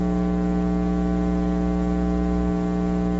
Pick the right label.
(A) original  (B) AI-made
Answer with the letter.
A